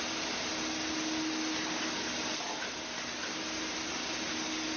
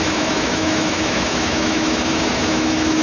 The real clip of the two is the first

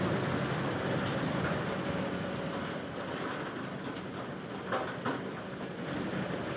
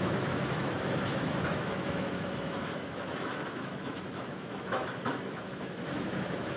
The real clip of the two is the first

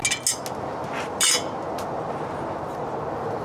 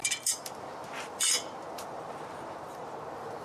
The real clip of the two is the first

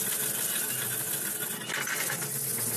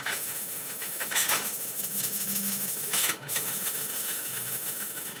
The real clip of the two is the first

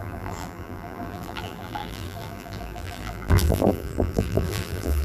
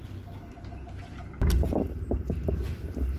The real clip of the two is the second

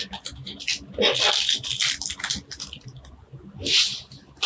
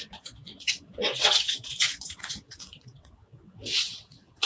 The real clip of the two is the first